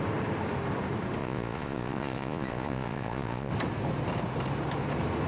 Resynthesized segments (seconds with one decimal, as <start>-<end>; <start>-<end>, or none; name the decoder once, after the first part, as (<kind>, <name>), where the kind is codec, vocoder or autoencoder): 1.2-3.5 (vocoder, Vocos)